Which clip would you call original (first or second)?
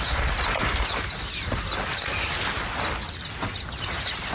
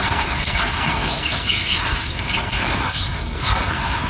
first